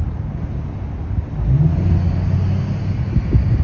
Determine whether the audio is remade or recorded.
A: recorded